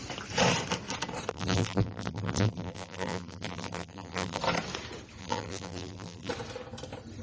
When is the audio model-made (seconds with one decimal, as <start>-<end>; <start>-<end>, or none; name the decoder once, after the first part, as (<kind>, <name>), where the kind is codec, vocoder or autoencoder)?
1.3-4.4 (vocoder, BigVGAN v2); 5.2-6.3